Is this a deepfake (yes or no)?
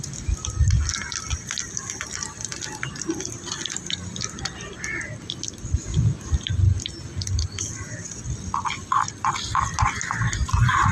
no